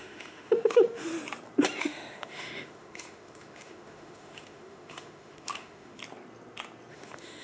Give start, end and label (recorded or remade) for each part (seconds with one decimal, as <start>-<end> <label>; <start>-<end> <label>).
0.0-1.1 remade; 1.1-1.8 recorded; 1.8-6.0 remade; 6.0-6.9 recorded; 6.9-7.4 remade